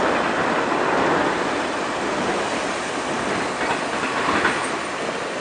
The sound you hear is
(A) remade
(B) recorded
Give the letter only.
B